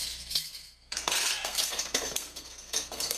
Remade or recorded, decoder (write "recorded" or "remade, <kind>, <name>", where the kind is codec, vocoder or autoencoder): remade, codec, SNAC